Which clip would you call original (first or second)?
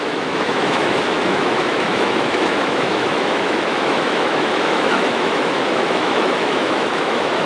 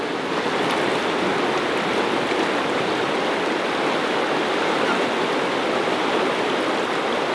second